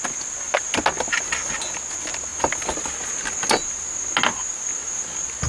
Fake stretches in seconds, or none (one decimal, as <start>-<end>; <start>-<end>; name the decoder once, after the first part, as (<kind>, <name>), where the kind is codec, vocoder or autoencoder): none